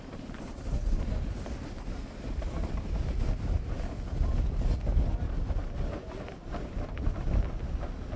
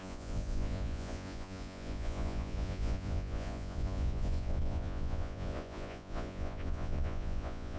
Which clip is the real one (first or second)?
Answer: first